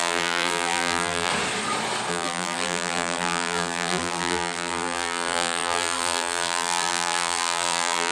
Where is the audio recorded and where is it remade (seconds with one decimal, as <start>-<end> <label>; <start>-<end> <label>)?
0.0-1.3 remade; 1.3-2.1 recorded; 2.1-8.1 remade